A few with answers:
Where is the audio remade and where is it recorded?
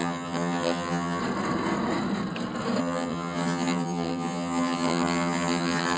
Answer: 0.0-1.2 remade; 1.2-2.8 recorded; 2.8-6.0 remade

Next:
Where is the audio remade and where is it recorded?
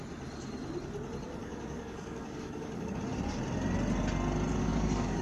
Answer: 0.0-1.4 recorded; 1.4-3.0 remade; 3.0-4.6 recorded; 4.6-5.2 remade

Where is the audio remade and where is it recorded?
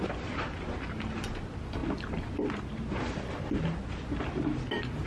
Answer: 0.0-5.1 recorded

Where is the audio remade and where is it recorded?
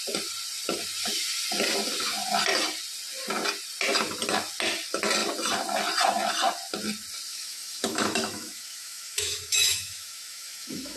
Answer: 0.0-7.3 recorded; 7.3-11.0 remade